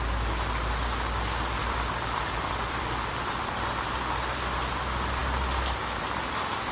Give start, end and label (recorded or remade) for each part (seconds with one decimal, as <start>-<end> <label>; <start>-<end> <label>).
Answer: 0.0-1.6 recorded; 1.6-3.9 remade; 3.9-6.7 recorded